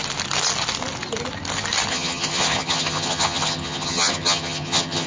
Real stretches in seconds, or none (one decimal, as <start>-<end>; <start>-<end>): 0.0-1.9